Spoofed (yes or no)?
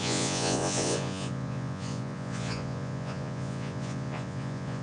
yes